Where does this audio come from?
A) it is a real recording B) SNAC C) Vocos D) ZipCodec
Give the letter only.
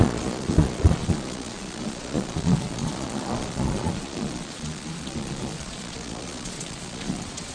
C